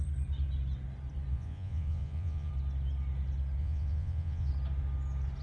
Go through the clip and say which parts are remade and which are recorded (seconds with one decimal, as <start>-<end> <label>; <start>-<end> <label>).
0.0-1.3 recorded; 1.3-2.5 remade; 2.5-3.6 recorded; 3.6-4.5 remade; 4.5-5.4 recorded